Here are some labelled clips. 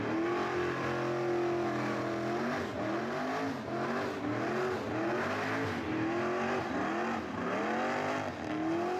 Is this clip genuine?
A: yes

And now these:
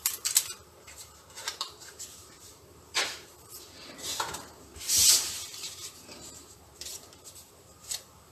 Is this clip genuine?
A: no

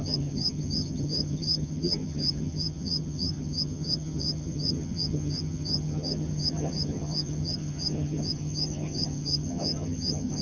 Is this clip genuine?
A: no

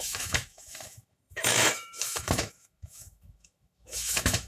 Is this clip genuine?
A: no